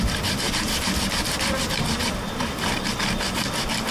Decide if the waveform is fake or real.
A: real